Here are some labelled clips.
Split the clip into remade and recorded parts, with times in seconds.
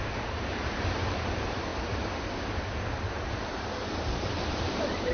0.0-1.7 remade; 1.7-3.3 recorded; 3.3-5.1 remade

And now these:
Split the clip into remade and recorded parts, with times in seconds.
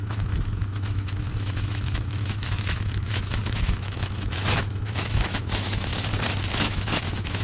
0.0-5.9 remade; 5.9-6.5 recorded; 6.5-7.4 remade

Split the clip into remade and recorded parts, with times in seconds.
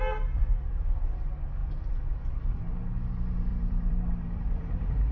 0.0-1.6 recorded; 1.6-2.6 remade; 2.6-3.5 recorded; 3.5-5.1 remade